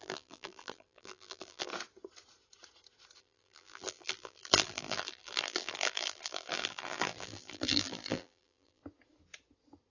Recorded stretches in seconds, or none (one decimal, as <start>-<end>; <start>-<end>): 1.7-3.2; 8.8-9.9